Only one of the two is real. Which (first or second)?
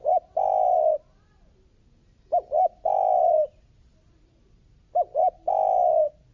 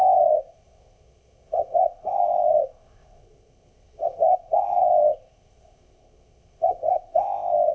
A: first